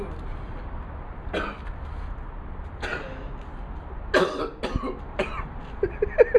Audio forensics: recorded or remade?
recorded